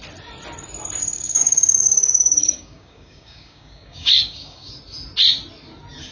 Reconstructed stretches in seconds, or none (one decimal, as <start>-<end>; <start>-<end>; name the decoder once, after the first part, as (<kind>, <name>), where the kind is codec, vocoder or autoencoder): 1.0-4.7 (codec, DAC)